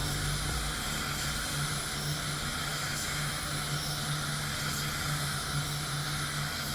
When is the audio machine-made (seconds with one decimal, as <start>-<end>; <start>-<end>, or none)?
2.7-3.3